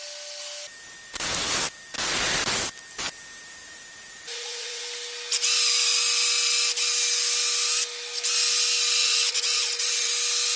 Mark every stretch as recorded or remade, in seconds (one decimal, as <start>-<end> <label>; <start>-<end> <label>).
0.0-3.6 recorded; 3.6-4.8 remade; 4.8-9.0 recorded; 9.0-10.1 remade; 10.1-10.6 recorded